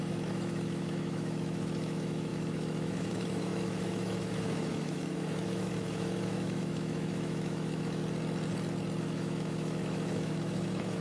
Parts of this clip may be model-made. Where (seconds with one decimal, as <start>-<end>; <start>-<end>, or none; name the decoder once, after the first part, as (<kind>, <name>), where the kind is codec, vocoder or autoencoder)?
0.0-8.0 (autoencoder, DAC-VAE); 9.0-11.0